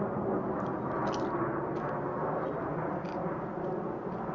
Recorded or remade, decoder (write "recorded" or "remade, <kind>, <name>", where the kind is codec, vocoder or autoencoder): recorded